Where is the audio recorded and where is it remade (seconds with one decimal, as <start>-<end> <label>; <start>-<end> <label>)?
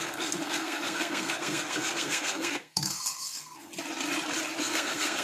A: 0.0-3.7 remade; 3.7-4.6 recorded; 4.6-5.2 remade